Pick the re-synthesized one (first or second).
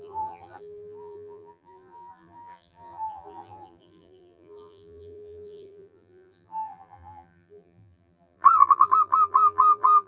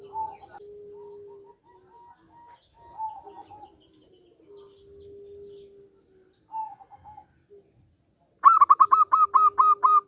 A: first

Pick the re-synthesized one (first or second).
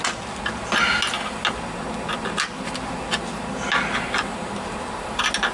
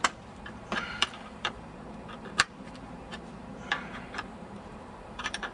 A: second